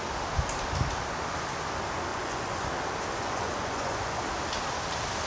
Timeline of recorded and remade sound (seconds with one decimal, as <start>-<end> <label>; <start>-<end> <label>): 0.0-2.1 recorded; 2.1-2.7 remade; 2.7-3.1 recorded; 3.1-4.2 remade; 4.2-5.3 recorded